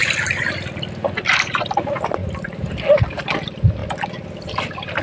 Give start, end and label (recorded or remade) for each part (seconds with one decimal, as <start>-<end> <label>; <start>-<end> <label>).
0.0-5.0 recorded